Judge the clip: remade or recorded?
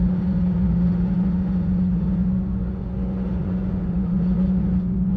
remade